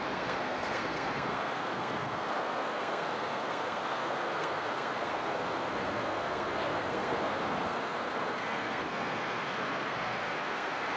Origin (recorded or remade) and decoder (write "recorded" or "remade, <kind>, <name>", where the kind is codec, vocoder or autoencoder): remade, codec, SNAC